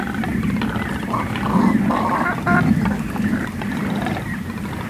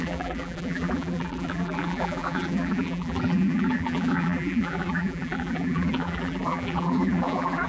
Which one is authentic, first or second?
first